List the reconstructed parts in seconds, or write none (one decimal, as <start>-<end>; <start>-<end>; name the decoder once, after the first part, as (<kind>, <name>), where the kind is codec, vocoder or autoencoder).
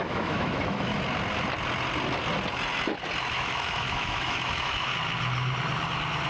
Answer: 0.0-0.9 (autoencoder, DAC-VAE); 3.3-4.9